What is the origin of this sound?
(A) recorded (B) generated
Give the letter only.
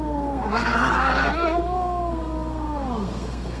B